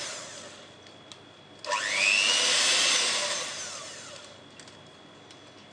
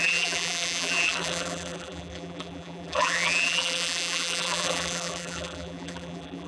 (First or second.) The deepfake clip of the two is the second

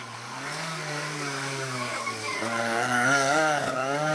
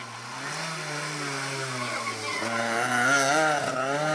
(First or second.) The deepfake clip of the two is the first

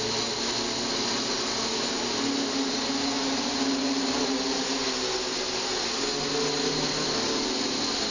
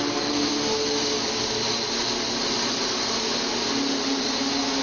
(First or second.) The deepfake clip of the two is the second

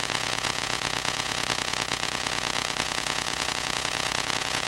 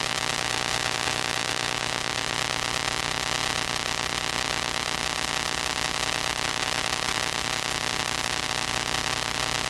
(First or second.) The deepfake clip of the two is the first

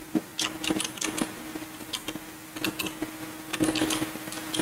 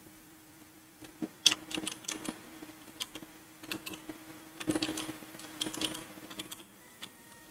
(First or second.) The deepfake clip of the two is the second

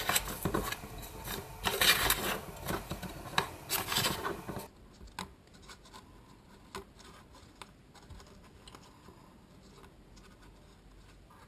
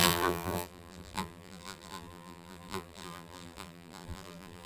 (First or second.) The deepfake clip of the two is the second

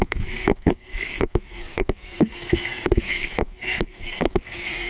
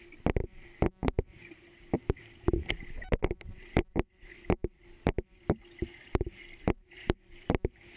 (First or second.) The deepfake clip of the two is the first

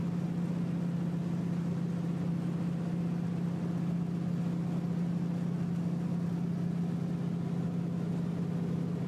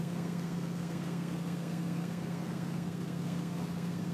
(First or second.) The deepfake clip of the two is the second